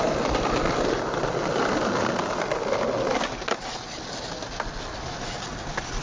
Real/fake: real